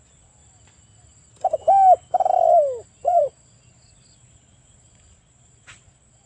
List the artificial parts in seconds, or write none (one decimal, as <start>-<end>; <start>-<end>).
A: 0.0-0.4; 2.9-6.3